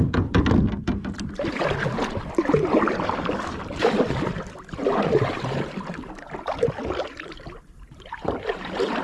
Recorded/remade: remade